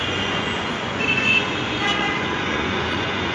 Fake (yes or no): yes